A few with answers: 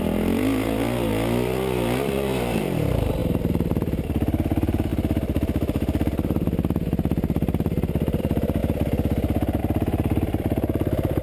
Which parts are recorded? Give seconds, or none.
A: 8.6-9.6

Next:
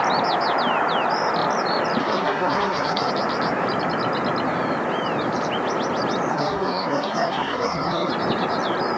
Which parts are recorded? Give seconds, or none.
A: 0.0-2.0; 3.1-6.3; 8.1-9.0

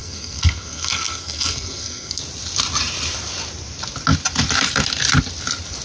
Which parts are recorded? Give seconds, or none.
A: 2.2-5.8

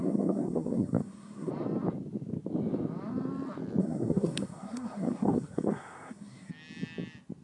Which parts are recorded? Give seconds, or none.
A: 1.5-3.8; 6.5-7.4

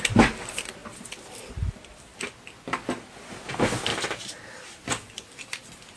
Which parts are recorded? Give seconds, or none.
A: 2.1-3.2; 3.9-4.9